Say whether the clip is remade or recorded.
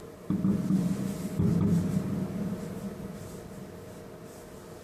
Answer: remade